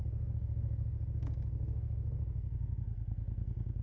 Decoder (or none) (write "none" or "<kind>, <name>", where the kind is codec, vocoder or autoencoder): codec, SNAC